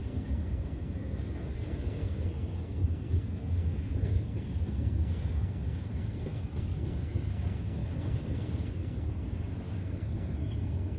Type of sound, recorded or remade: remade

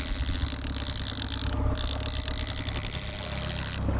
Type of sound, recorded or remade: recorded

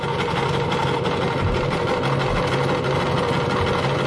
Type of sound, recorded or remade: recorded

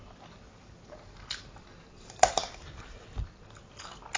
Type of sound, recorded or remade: recorded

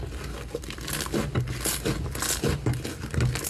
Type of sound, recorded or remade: recorded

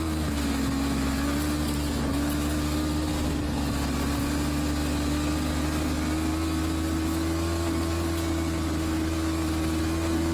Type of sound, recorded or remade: recorded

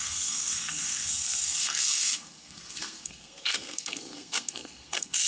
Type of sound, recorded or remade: remade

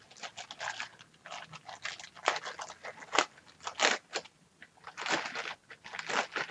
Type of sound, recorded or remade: recorded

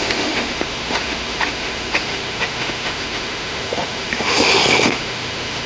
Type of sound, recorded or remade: remade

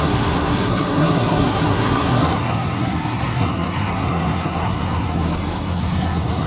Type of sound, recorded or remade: remade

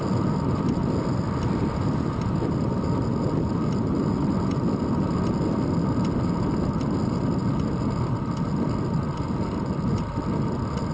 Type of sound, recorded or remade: recorded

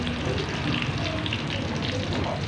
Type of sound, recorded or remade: recorded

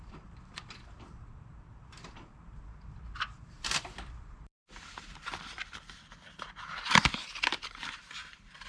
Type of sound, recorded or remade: remade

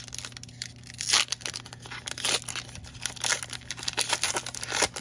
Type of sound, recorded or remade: recorded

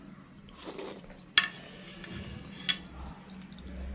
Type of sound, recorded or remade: recorded